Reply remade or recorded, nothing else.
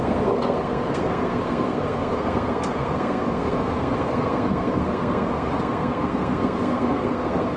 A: remade